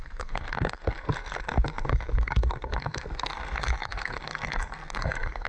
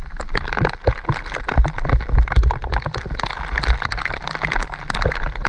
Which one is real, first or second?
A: second